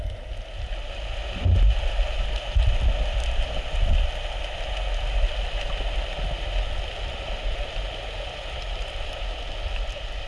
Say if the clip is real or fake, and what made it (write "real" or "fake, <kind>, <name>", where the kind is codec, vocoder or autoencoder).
real